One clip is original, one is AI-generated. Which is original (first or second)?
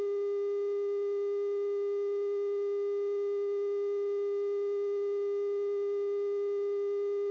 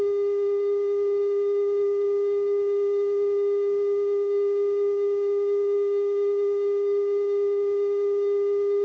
first